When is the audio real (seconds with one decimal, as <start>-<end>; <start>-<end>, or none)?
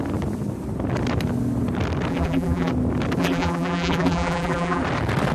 0.0-2.1; 2.7-3.2; 4.8-5.3